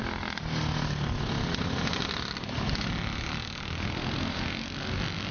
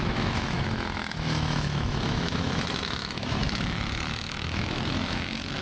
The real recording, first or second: first